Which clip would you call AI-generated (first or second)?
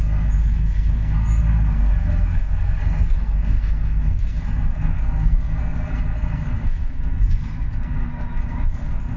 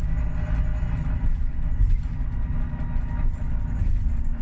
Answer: first